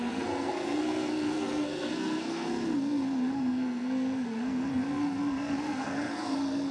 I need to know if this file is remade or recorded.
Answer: remade